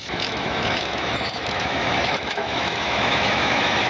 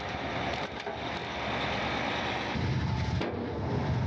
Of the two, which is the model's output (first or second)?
first